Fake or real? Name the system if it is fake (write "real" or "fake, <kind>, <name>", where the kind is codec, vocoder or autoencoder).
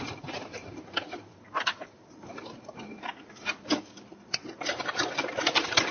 fake, vocoder, BigVGAN v2